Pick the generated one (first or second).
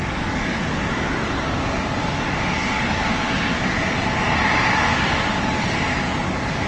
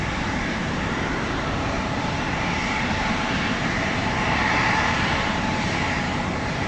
second